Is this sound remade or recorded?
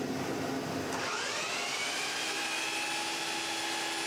recorded